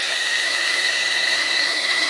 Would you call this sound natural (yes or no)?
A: no